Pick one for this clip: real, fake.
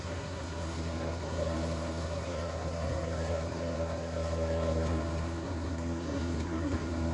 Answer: fake